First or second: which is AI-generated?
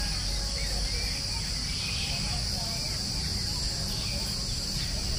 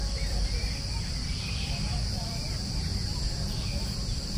second